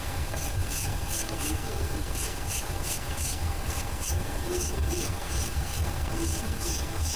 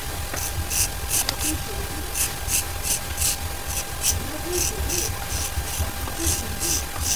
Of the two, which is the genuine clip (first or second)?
second